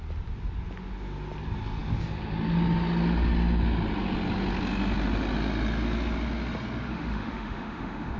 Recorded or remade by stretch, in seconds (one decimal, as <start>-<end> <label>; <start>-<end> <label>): 0.0-6.9 recorded; 6.9-8.2 remade